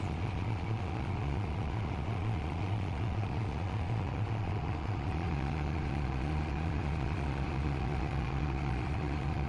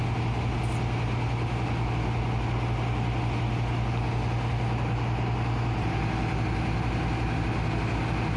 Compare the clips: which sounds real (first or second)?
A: second